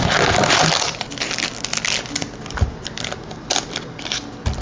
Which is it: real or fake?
real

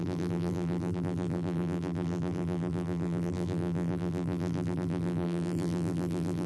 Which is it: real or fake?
fake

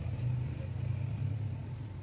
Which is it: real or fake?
fake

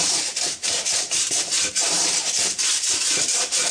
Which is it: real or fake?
fake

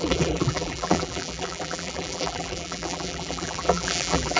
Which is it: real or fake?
fake